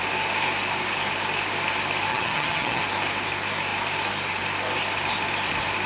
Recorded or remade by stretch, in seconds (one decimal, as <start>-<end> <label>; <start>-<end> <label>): 0.0-2.1 recorded; 2.1-2.8 remade; 2.8-5.9 recorded